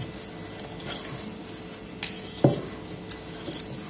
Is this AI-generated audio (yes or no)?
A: no